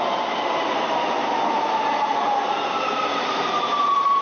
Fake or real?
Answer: fake